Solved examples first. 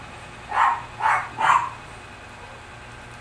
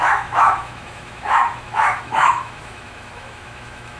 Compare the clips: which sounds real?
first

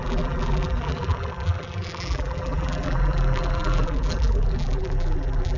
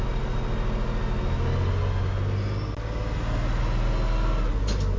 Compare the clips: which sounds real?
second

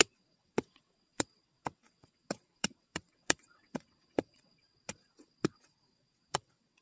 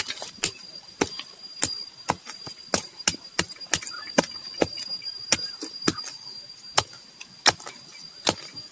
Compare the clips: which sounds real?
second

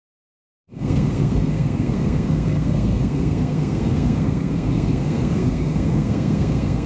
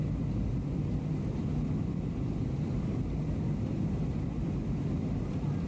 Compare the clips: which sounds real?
second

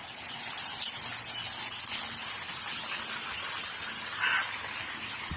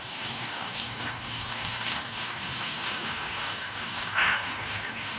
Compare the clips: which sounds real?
first